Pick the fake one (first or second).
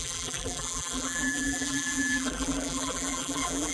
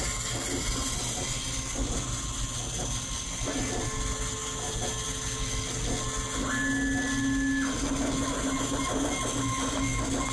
first